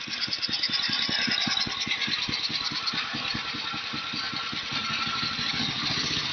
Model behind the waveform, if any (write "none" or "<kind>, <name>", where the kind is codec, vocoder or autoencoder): none